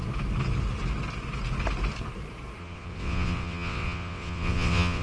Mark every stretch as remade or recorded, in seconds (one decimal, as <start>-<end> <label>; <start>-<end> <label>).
0.0-2.6 recorded; 2.6-5.0 remade